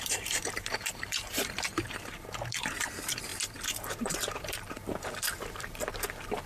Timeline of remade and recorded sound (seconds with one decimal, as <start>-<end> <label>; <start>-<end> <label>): 0.0-1.7 remade; 1.7-2.6 recorded; 2.6-6.5 remade